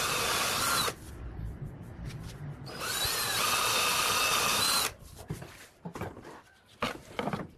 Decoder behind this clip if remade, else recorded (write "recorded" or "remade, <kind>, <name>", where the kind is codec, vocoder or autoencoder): recorded